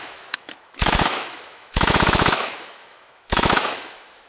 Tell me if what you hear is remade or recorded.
remade